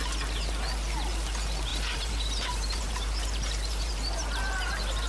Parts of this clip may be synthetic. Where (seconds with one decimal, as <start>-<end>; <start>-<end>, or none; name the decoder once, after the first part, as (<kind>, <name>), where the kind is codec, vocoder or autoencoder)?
1.7-5.1 (vocoder, BigVGAN v2)